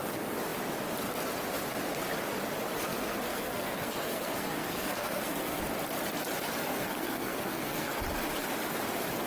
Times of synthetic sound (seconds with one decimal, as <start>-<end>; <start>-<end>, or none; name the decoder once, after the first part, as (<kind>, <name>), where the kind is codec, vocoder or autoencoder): 2.9-5.6 (codec, SNAC); 6.7-8.0